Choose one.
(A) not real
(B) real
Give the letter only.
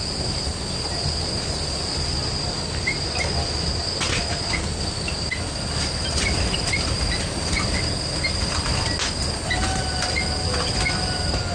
B